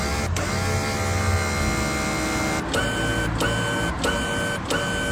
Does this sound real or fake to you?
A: real